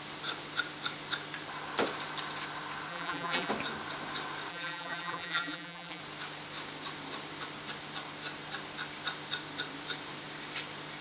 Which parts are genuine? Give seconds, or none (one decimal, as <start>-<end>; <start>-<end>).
0.0-2.9; 3.5-4.5; 6.0-11.0